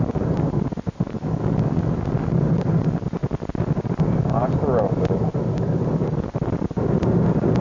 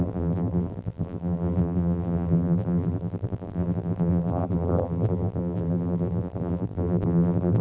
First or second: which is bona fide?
first